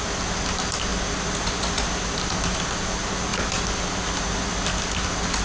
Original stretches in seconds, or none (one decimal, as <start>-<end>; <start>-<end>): 0.0-5.4